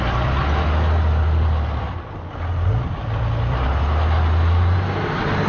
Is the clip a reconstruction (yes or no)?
no